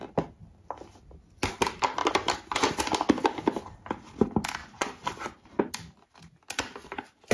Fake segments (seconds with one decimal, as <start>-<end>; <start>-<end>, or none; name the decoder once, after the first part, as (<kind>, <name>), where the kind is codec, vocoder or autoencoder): 4.6-5.7 (vocoder, Vocos)